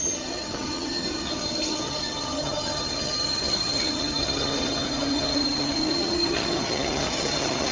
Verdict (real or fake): fake